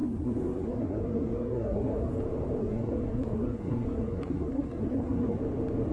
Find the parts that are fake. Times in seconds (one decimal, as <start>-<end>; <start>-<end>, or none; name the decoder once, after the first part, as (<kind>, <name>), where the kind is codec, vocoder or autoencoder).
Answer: 0.0-2.1 (codec, SNAC); 2.6-5.4